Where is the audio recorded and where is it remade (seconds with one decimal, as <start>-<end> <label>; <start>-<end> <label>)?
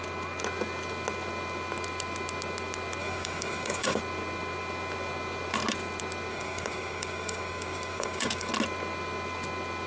0.0-3.0 recorded; 3.0-4.0 remade; 4.0-6.3 recorded; 6.3-8.5 remade; 8.5-9.9 recorded